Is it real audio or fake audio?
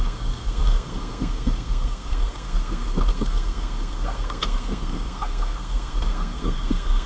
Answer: fake